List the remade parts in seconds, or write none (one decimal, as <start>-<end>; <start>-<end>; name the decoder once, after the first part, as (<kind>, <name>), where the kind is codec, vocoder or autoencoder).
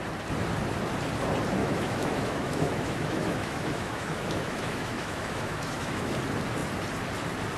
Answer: 1.6-6.1 (autoencoder, DAC-VAE)